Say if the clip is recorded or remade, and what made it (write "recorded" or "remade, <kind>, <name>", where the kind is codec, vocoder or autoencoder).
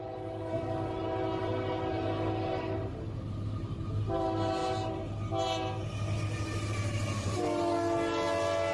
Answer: recorded